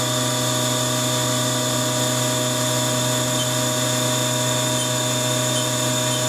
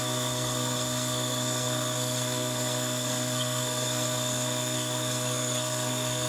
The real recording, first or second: first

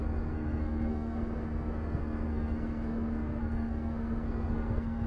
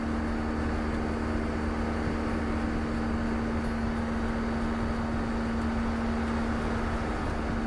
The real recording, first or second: second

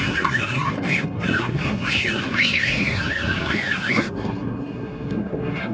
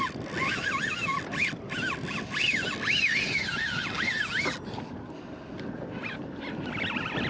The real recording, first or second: second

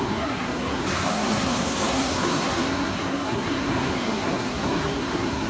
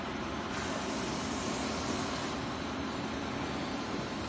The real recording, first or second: second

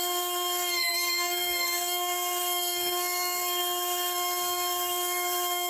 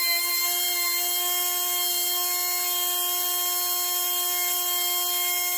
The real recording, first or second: second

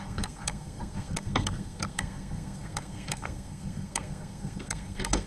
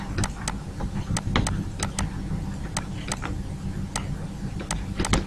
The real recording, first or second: second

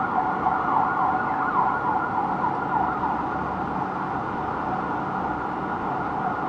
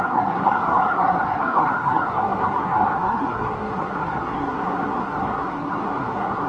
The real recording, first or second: first